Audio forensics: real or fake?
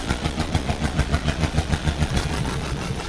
fake